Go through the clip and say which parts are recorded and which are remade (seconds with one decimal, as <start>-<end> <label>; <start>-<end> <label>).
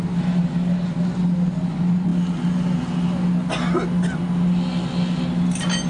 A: 0.0-5.9 recorded